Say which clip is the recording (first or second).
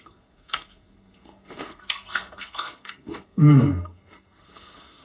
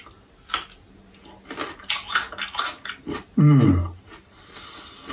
second